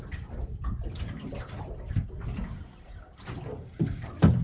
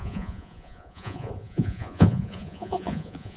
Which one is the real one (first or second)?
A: first